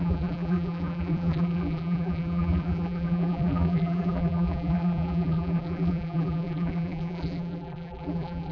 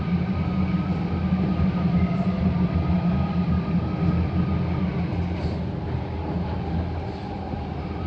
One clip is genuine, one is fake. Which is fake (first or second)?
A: first